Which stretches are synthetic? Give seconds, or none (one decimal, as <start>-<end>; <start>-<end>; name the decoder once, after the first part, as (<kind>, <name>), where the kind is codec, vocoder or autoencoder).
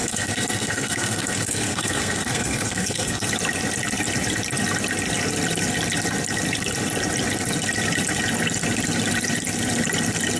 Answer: 0.0-3.3 (codec, SNAC)